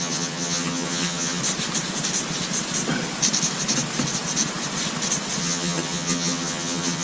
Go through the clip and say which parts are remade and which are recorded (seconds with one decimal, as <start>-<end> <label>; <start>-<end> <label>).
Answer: 0.0-1.4 remade; 1.4-5.4 recorded; 5.4-7.0 remade